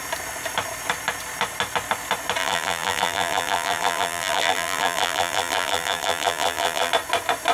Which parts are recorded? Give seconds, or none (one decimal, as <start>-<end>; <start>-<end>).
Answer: 0.0-2.4; 6.9-7.5